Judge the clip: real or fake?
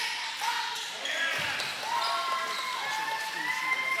real